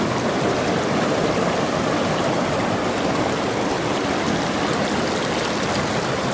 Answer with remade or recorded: recorded